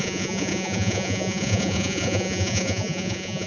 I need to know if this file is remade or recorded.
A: remade